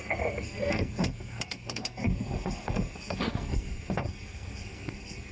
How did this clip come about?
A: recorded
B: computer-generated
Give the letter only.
B